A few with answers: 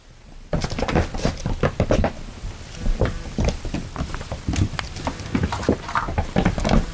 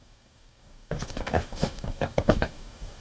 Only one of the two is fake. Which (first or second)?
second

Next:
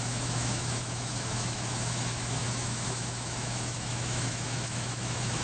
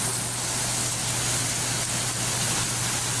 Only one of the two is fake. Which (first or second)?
first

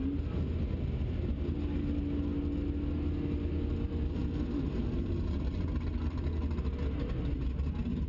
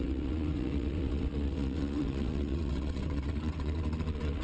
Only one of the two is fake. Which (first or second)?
second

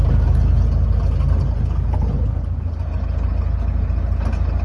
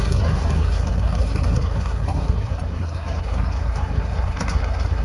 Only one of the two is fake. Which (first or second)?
second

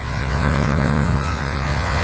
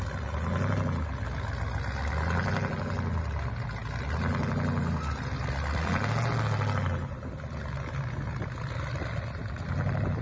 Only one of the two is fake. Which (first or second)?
first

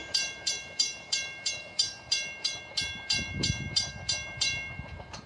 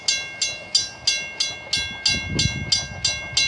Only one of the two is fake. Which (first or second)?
first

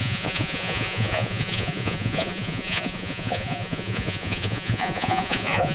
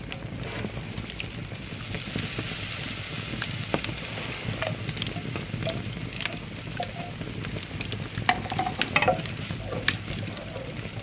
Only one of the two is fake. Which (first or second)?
first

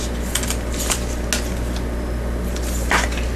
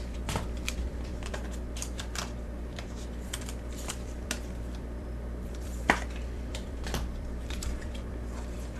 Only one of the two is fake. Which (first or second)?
second